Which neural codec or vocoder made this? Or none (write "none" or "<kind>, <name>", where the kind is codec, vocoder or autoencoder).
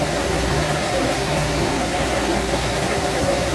codec, SNAC